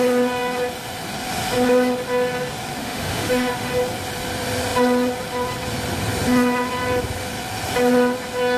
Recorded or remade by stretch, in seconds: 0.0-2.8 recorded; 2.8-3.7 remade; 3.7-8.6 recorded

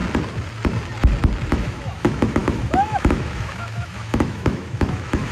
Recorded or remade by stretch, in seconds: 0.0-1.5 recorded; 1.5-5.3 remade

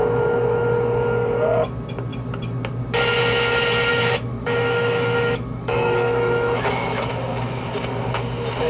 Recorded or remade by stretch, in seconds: 0.0-3.9 recorded; 3.9-7.1 remade; 7.1-8.7 recorded